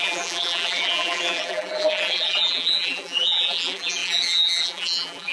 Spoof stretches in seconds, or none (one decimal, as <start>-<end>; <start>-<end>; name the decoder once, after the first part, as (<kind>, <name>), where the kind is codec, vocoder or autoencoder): 0.0-5.3 (vocoder, BigVGAN v2)